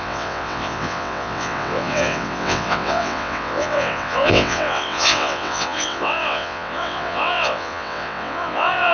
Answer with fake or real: fake